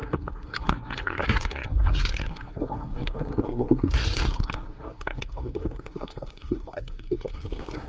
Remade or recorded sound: remade